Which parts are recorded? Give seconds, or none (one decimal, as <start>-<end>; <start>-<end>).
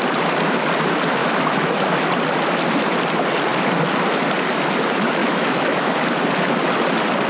0.0-1.2; 2.1-5.2; 5.9-7.3